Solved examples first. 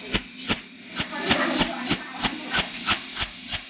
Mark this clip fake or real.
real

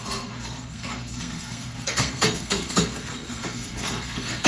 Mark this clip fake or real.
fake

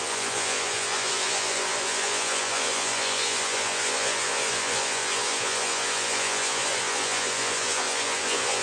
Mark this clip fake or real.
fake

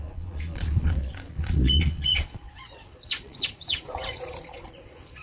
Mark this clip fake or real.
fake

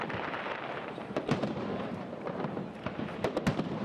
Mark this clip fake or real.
fake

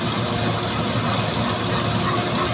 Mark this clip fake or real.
real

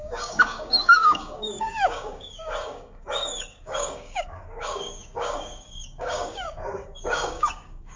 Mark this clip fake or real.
fake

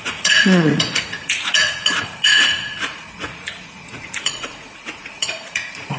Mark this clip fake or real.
fake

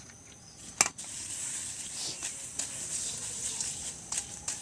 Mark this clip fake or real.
real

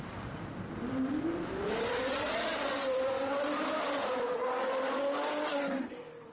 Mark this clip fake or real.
fake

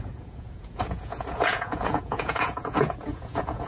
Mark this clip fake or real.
fake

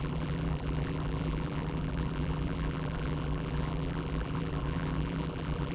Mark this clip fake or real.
fake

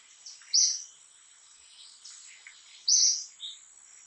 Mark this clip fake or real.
real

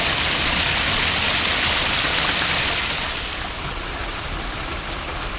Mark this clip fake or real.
real